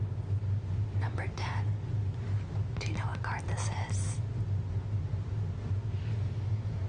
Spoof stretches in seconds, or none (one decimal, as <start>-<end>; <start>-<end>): none